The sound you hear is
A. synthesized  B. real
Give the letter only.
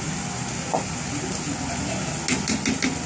B